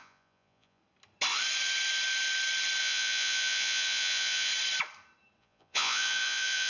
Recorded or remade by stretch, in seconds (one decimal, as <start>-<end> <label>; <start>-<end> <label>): 0.0-0.8 remade; 0.8-2.8 recorded; 2.8-4.5 remade; 4.5-5.4 recorded; 5.4-6.7 remade